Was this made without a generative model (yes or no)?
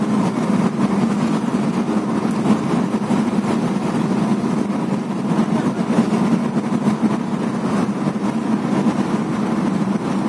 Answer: yes